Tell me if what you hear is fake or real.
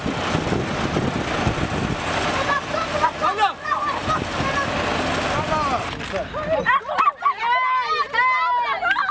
real